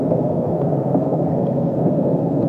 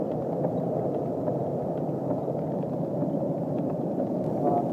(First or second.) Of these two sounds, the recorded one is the second